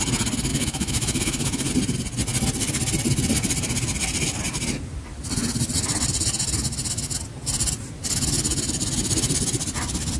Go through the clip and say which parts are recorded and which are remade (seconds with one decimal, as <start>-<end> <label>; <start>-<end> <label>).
0.0-0.5 recorded; 0.5-1.7 remade; 1.7-10.2 recorded